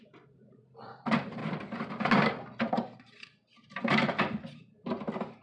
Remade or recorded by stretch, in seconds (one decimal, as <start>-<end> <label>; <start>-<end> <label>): 0.0-1.4 remade; 1.4-2.7 recorded; 2.7-5.4 remade

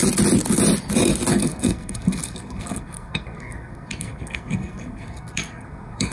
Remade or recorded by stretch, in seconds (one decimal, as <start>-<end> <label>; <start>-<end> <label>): 0.0-1.3 recorded; 1.3-6.1 remade